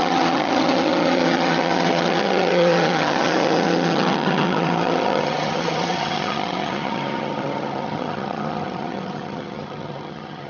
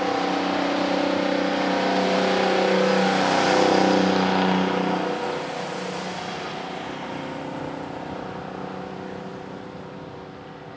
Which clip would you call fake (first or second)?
first